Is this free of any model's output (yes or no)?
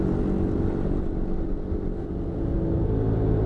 yes